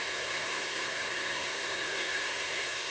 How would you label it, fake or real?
fake